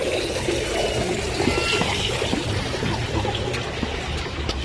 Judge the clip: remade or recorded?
recorded